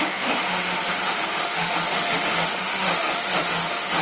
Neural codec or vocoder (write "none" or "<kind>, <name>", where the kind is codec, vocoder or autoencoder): autoencoder, DAC-VAE